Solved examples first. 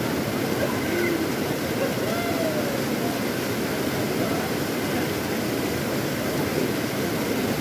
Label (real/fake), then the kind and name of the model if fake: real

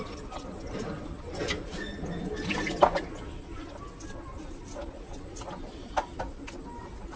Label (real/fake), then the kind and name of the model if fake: real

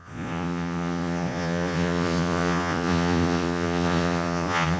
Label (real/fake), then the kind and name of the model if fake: fake, vocoder, Vocos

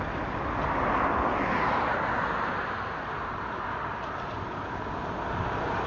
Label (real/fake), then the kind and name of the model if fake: real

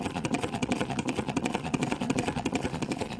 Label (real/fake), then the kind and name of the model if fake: fake, vocoder, Vocos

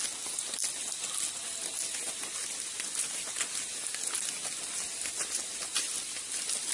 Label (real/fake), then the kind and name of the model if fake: real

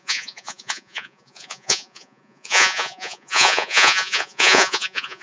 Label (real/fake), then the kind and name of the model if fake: fake, vocoder, Vocos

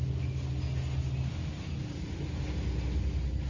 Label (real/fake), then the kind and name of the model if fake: real